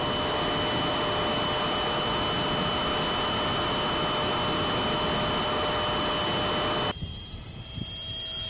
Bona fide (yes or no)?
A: yes